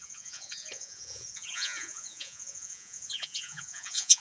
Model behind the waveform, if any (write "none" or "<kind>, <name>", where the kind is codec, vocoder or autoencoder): vocoder, Vocos